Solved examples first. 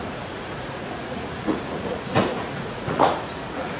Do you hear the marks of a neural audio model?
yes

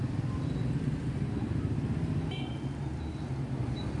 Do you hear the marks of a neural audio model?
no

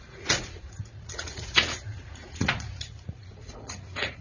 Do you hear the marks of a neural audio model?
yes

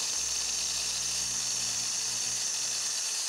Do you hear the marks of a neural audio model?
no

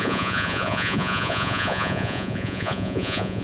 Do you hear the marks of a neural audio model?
yes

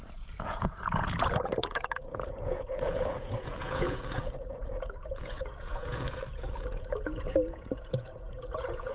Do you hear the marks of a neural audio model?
yes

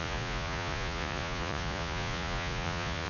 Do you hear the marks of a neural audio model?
yes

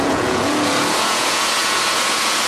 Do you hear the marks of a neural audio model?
yes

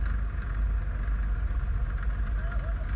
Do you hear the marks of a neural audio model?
no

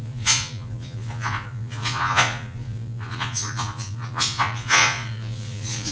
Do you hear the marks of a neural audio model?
yes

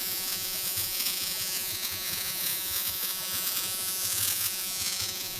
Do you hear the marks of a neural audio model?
yes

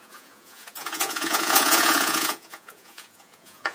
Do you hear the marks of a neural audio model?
yes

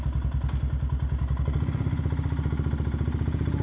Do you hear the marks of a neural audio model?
no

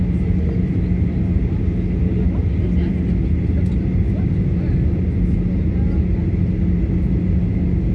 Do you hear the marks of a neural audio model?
no